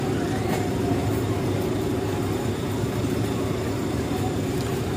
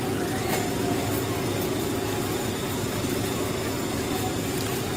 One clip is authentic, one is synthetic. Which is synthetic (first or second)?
first